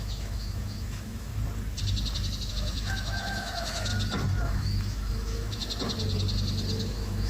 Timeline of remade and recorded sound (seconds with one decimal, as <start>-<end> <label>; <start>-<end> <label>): 0.0-1.3 remade; 1.3-2.5 recorded; 2.5-3.9 remade; 3.9-4.4 recorded; 4.4-5.6 remade; 5.6-6.8 recorded; 6.8-7.3 remade